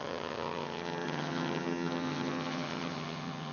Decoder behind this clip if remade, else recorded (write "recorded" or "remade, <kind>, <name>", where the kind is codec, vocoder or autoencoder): remade, vocoder, HiFi-GAN